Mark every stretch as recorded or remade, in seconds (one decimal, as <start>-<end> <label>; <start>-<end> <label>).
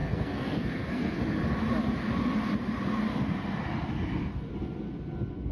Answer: 0.0-1.2 remade; 1.2-5.5 recorded